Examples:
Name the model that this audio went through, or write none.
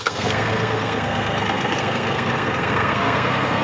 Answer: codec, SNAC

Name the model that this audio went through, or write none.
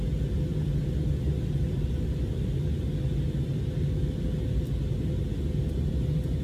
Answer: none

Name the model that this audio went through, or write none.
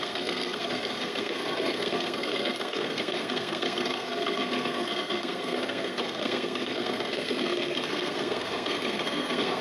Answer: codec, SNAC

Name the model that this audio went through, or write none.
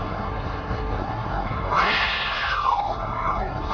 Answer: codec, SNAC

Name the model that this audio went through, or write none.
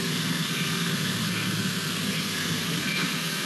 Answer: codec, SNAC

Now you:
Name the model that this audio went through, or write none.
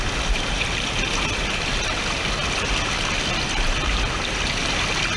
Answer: none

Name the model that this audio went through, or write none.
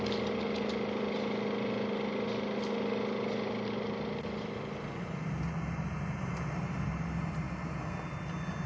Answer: none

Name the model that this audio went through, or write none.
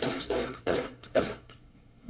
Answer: codec, SNAC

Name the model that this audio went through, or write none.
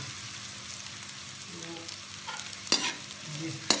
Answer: none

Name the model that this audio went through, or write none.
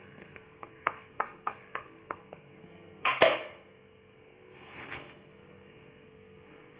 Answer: codec, SNAC